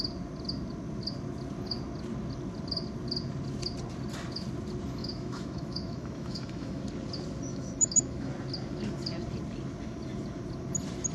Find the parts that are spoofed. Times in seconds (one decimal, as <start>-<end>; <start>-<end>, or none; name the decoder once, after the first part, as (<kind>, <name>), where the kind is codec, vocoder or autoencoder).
5.0-6.8 (autoencoder, DAC-VAE); 7.5-8.3